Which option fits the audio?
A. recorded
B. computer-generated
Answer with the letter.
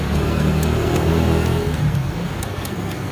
B